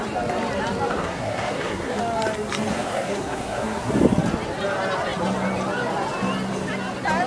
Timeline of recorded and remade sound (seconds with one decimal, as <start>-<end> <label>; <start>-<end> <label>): 0.0-0.9 recorded; 0.9-2.0 remade; 2.0-2.7 recorded; 2.7-3.9 remade; 3.9-7.3 recorded